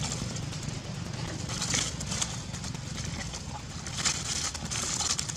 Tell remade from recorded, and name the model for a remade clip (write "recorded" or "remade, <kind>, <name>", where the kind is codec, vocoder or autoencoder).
recorded